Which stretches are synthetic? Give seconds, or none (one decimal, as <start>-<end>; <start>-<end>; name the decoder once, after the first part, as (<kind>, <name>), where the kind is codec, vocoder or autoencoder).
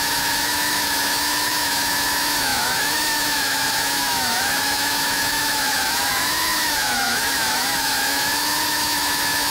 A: 0.0-9.5 (autoencoder, DAC-VAE)